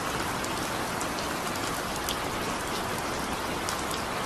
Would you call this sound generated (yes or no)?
no